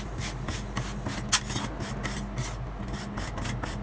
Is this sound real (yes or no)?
yes